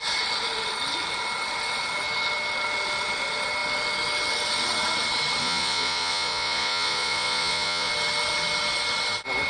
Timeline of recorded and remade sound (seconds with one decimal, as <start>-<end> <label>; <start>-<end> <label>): 0.0-5.4 recorded; 5.4-7.9 remade; 7.9-9.5 recorded